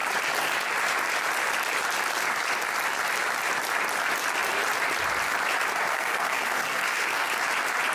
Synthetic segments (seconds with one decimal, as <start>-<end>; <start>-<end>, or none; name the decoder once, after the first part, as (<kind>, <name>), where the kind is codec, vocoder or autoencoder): 5.9-7.3 (codec, SNAC)